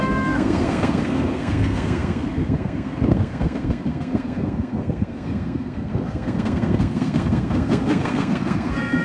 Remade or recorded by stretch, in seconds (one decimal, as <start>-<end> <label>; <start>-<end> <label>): 0.0-9.0 remade